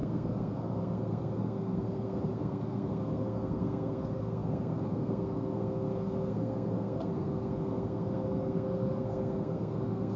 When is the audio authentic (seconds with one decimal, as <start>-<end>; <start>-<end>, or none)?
none